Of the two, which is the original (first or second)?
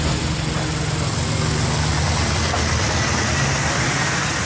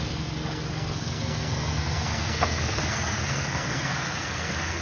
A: first